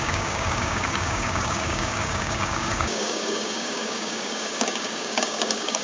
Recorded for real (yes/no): no